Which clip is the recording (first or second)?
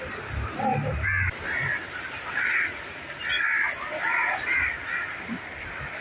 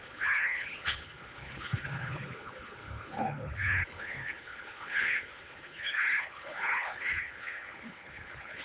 first